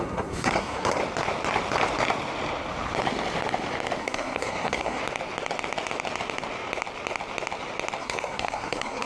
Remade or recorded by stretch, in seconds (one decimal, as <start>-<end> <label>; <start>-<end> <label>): 0.0-1.0 remade; 1.0-4.0 recorded; 4.0-5.0 remade; 5.0-8.0 recorded; 8.0-9.1 remade